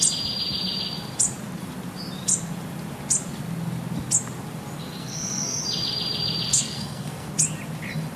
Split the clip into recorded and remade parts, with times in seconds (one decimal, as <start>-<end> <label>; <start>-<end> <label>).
0.0-5.0 recorded; 5.0-5.6 remade; 5.6-6.5 recorded; 6.5-7.3 remade; 7.3-8.2 recorded